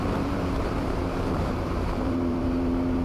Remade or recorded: remade